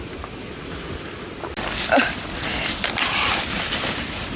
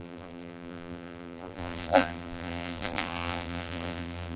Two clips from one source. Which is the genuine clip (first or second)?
first